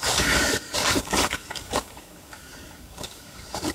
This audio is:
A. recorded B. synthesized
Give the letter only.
B